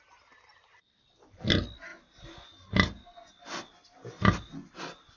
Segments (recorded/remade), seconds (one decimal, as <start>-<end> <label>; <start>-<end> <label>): 0.0-5.2 recorded